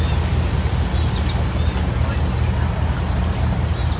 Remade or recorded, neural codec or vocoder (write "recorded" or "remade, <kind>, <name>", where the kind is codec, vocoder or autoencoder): recorded